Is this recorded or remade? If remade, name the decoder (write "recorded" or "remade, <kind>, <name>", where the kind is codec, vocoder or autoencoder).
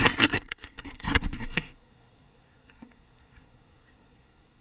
remade, codec, SNAC